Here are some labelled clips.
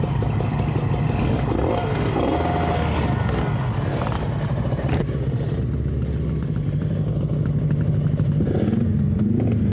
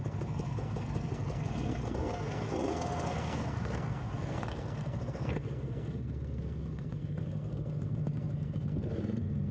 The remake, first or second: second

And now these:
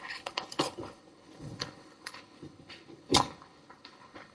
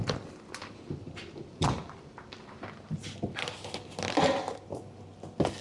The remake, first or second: first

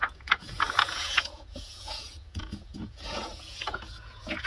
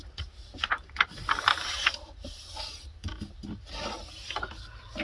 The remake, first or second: first